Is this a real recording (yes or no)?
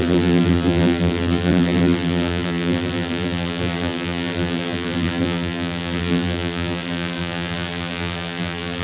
no